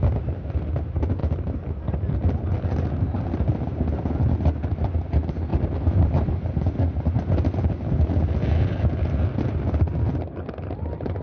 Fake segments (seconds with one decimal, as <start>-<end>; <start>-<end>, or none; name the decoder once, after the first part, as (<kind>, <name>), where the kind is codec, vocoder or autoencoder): 1.2-2.7 (vocoder, BigVGAN v2); 5.5-6.3